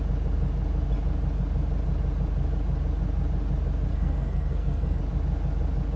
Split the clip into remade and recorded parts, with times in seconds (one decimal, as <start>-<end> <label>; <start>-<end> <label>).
0.0-3.9 recorded; 3.9-5.0 remade; 5.0-6.0 recorded